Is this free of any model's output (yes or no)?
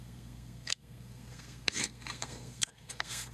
no